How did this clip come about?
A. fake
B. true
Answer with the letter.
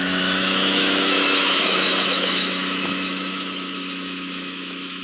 A